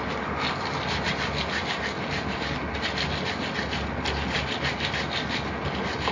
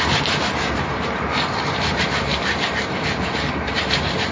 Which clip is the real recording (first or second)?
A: first